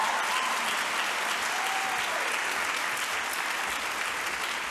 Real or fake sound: real